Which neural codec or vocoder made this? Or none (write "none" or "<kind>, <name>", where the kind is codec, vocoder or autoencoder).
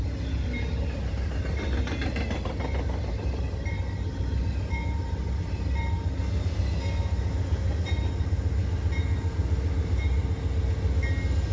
none